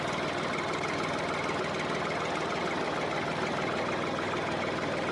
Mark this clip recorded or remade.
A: recorded